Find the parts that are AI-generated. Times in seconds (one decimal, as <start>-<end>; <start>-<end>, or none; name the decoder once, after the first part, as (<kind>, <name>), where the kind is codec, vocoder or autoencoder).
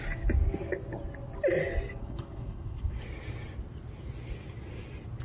2.0-3.0 (codec, HILCodec)